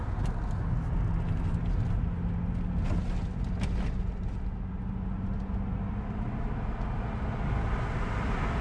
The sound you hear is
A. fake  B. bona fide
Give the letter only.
B